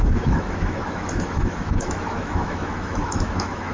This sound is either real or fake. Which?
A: fake